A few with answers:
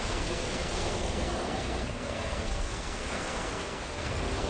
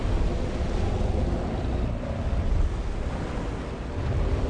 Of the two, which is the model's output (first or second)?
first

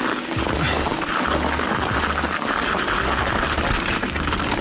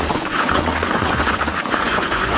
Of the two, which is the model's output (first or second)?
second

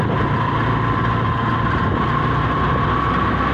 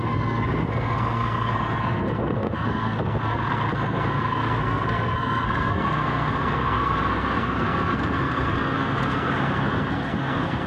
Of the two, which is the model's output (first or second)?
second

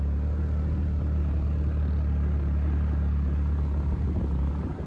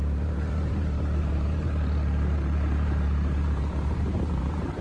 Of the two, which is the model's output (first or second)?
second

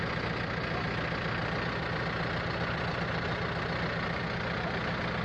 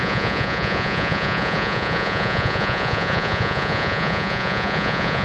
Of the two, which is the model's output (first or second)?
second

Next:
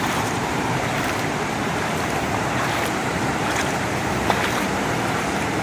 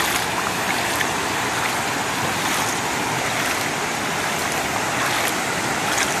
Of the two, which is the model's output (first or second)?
first